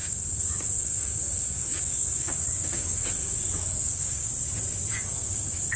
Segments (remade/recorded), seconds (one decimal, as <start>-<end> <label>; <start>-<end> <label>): 0.0-4.3 remade; 4.3-4.9 recorded; 4.9-5.8 remade